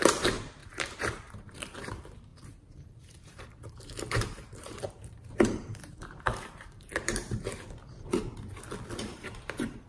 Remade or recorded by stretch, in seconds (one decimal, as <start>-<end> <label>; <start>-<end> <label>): 0.0-8.2 remade; 8.2-9.0 recorded; 9.0-9.9 remade